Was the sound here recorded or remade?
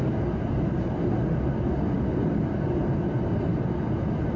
recorded